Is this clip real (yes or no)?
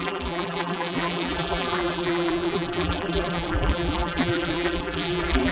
no